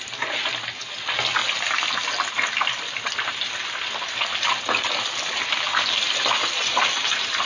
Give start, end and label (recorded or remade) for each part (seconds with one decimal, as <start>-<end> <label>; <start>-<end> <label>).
0.0-7.5 recorded